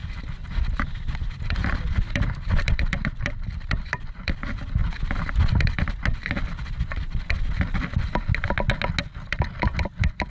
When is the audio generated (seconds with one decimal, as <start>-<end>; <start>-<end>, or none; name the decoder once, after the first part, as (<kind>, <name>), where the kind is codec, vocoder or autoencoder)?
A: 0.0-4.8 (vocoder, BigVGAN v2); 5.3-6.0; 9.3-10.3